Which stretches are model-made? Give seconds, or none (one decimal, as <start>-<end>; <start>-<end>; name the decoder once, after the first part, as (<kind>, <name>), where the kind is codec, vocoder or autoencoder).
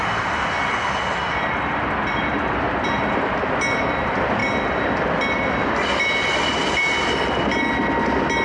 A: none